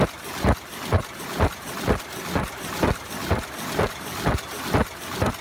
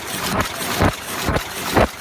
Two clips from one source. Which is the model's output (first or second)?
second